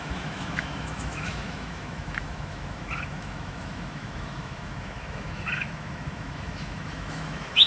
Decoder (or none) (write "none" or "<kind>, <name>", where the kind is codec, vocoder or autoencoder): autoencoder, DAC-VAE